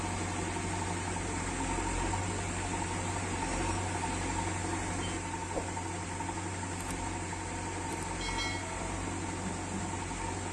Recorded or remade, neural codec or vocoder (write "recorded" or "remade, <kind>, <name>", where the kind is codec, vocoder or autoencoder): recorded